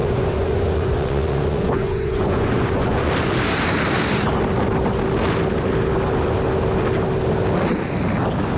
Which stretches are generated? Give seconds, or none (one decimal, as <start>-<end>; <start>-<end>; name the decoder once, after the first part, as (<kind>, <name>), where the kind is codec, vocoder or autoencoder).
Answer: 0.0-3.1 (vocoder, Vocos)